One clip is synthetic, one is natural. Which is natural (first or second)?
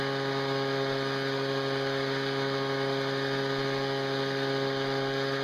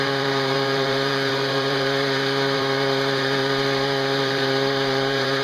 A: first